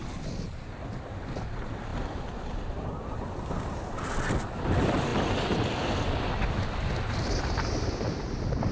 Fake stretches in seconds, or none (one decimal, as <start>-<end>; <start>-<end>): none